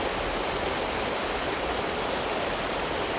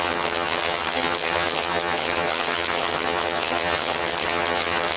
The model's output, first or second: second